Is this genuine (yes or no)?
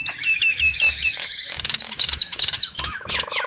no